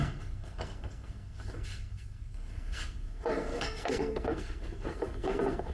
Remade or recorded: remade